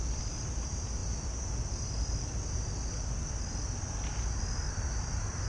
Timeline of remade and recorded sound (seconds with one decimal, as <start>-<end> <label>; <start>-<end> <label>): 0.0-5.5 recorded